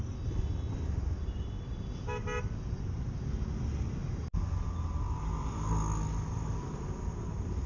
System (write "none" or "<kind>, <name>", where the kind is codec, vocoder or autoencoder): none